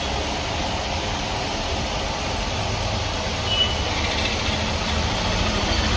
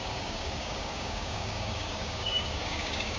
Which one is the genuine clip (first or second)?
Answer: first